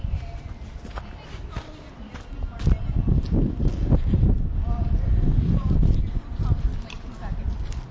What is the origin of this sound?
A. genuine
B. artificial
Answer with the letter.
A